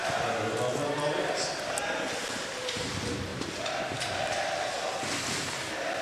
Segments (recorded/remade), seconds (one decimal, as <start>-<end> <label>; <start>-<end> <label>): 0.0-3.3 recorded; 3.3-3.8 remade; 3.8-6.0 recorded